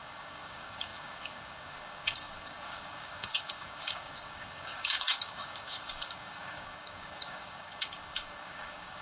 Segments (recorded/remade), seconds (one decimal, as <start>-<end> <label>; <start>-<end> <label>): 0.0-9.0 remade